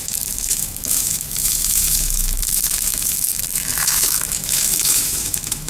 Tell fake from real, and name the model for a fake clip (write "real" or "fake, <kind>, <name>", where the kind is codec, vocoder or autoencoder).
fake, autoencoder, DAC-VAE